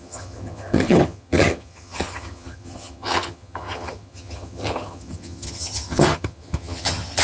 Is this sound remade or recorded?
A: remade